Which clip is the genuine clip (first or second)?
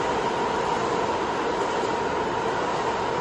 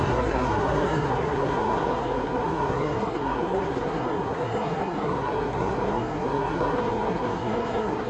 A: first